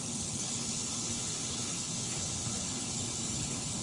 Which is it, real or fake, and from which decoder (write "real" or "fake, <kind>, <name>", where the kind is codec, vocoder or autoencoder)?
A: fake, codec, HILCodec